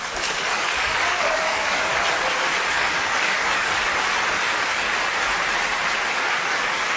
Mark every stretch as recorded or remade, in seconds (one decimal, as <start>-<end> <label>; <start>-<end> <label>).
0.0-1.9 remade; 1.9-2.7 recorded; 2.7-3.9 remade; 3.9-4.5 recorded; 4.5-4.9 remade; 4.9-6.1 recorded; 6.1-7.0 remade